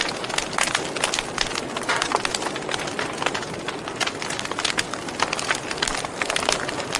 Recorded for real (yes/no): yes